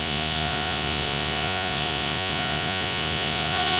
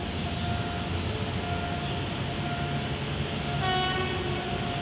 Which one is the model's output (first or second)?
first